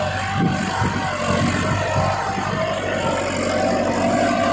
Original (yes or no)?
yes